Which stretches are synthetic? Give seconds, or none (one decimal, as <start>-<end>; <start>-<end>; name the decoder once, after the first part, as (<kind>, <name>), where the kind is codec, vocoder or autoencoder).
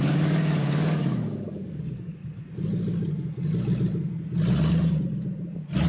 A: 0.0-2.2 (codec, DAC)